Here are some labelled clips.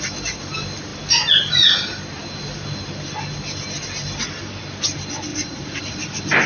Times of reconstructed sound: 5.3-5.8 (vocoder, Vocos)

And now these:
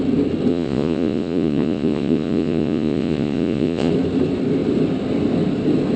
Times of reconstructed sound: 0.5-3.9 (vocoder, Vocos)